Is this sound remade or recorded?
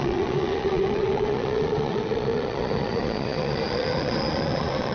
remade